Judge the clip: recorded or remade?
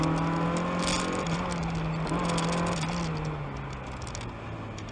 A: recorded